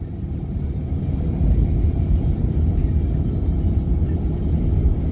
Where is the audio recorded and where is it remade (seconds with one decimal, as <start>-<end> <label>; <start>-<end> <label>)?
0.0-5.1 recorded